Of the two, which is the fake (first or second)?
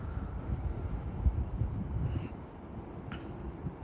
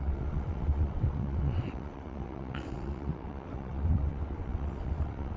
second